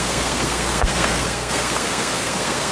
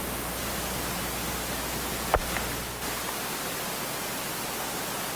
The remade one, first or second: first